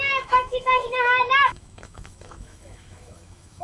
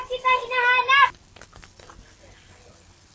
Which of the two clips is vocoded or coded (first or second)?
first